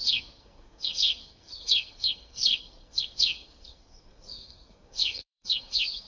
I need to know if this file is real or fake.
fake